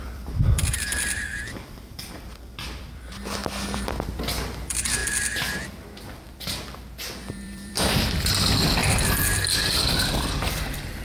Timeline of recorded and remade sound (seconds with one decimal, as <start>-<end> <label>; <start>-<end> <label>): 0.0-5.0 remade; 5.0-6.0 recorded; 6.0-11.0 remade